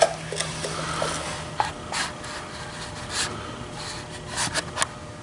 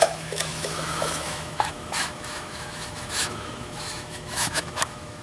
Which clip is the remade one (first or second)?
second